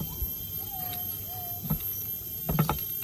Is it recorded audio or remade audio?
recorded